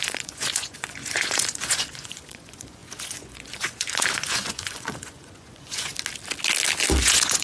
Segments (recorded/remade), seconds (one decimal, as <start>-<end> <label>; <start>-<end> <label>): 0.0-5.9 remade; 5.9-7.0 recorded; 7.0-7.4 remade